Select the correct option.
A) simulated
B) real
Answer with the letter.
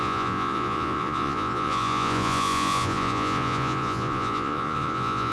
A